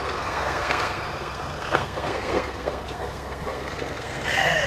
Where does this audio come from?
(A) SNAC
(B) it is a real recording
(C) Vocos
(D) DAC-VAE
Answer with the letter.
A